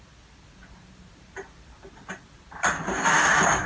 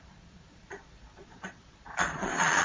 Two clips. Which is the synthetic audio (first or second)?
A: second